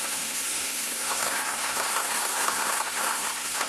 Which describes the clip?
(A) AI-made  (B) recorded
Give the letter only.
A